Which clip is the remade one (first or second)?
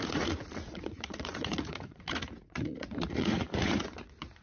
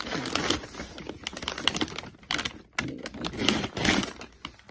first